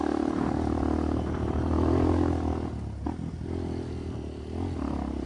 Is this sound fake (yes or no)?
no